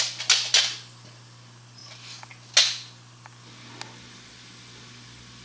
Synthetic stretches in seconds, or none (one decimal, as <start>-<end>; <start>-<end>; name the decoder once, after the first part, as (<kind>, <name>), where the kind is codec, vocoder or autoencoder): none